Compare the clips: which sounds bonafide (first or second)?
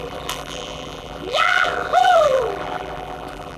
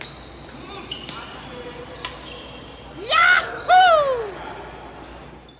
second